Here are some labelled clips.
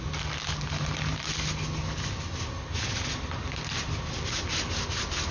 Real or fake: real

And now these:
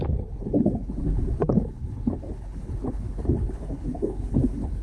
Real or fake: fake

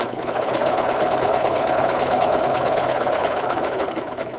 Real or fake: fake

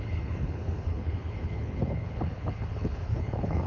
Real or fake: fake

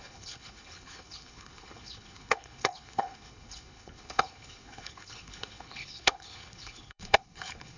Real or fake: fake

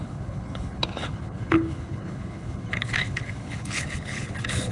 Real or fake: fake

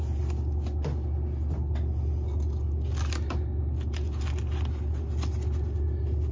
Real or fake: real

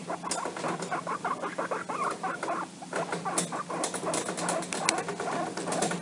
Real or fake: real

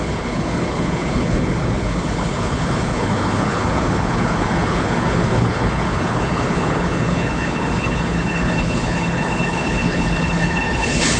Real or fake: fake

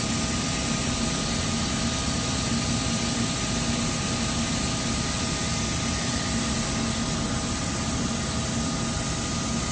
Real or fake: real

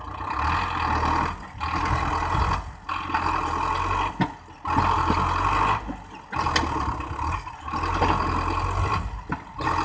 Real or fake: real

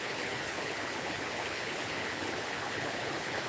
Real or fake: fake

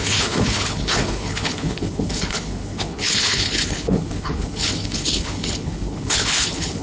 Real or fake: fake